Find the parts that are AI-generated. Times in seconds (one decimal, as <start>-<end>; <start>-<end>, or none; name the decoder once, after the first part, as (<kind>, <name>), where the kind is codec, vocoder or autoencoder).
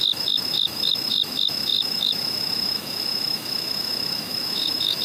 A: 0.0-5.0 (autoencoder, DAC-VAE)